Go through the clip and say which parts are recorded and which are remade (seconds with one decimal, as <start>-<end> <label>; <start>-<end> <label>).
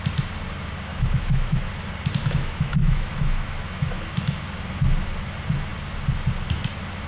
0.0-0.9 recorded; 0.9-1.7 remade; 1.7-2.2 recorded; 2.2-4.4 remade; 4.4-7.1 recorded